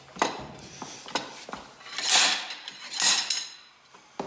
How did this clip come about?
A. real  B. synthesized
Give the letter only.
A